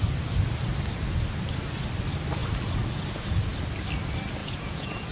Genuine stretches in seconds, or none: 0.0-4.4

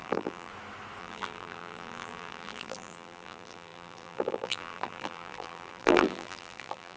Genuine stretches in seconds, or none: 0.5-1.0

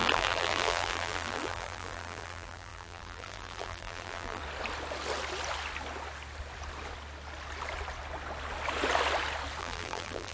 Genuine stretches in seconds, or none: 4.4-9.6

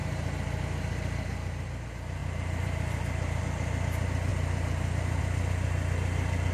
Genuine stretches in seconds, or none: 0.6-2.2; 3.4-4.3; 5.2-6.5

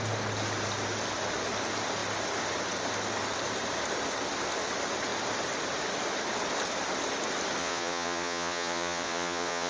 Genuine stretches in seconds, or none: 0.0-7.6

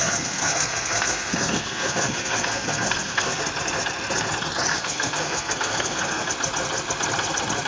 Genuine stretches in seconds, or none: 3.4-4.7; 6.3-7.7